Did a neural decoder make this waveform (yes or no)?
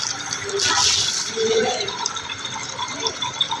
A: no